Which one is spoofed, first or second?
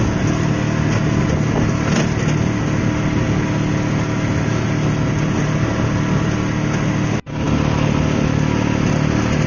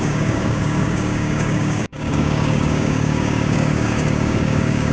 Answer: second